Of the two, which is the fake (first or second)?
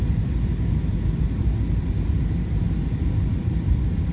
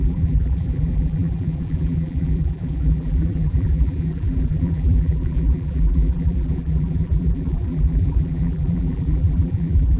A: second